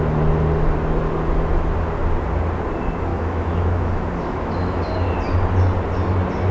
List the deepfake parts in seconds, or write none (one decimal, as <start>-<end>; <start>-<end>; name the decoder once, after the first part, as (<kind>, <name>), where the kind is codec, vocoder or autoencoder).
3.1-4.8 (autoencoder, DAC-VAE)